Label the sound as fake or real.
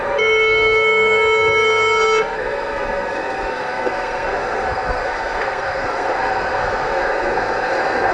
fake